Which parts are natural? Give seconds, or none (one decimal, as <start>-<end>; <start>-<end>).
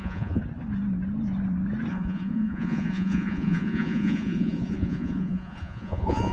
0.4-1.9